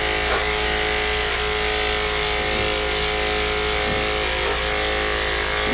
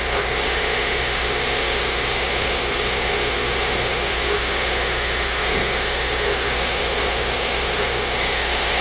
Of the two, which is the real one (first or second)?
first